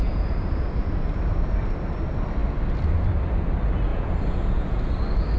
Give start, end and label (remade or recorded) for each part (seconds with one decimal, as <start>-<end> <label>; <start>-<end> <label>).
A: 0.0-1.6 remade; 1.6-3.9 recorded; 3.9-5.0 remade; 5.0-5.4 recorded

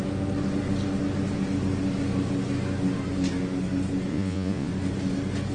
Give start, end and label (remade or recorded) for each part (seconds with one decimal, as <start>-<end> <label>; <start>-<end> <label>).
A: 0.0-4.1 recorded; 4.1-4.7 remade; 4.7-5.5 recorded

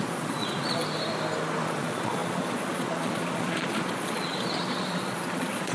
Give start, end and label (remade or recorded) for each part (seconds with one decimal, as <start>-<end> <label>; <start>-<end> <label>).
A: 0.0-0.8 remade; 0.8-1.6 recorded; 1.6-5.7 remade

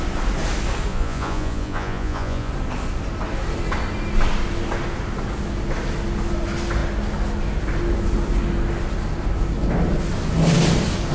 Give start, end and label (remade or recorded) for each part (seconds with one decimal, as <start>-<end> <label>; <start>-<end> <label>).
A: 0.0-0.9 recorded; 0.9-2.5 remade; 2.5-11.1 recorded

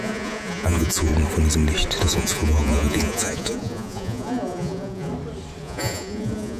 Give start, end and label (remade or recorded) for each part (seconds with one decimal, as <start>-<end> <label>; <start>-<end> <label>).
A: 0.0-1.1 remade; 1.1-2.0 recorded; 2.0-5.1 remade; 5.1-5.6 recorded; 5.6-6.6 remade